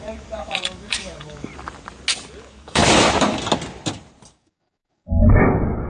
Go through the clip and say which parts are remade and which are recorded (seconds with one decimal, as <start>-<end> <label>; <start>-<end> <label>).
0.0-1.5 remade; 1.5-2.4 recorded; 2.4-2.8 remade; 2.8-4.3 recorded; 4.3-5.9 remade